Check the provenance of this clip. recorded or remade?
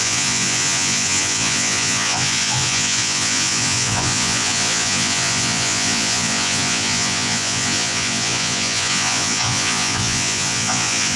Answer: remade